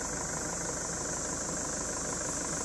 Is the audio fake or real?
real